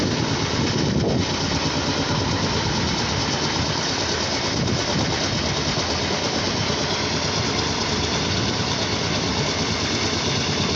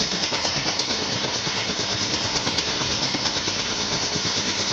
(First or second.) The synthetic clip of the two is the second